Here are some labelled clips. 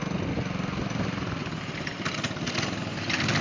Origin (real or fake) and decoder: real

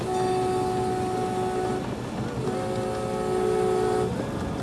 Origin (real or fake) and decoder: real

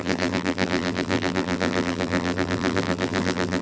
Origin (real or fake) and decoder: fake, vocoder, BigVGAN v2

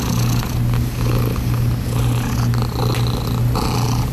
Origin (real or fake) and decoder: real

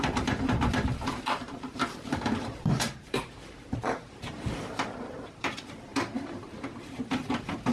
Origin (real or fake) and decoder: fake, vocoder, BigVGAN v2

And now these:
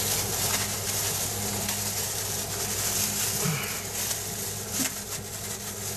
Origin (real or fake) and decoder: real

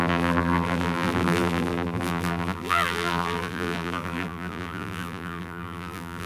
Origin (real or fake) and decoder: fake, vocoder, BigVGAN v2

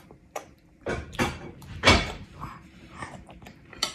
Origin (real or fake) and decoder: fake, vocoder, BigVGAN v2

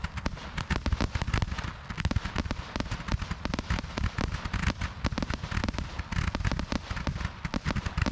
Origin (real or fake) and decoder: real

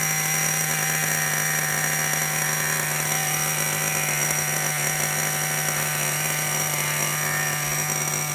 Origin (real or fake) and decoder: real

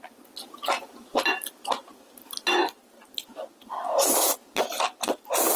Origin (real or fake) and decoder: real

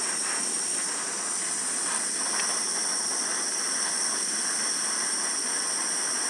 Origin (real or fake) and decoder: real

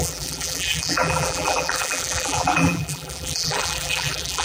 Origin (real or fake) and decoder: fake, vocoder, BigVGAN v2